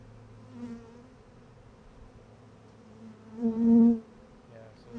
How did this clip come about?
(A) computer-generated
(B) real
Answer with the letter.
B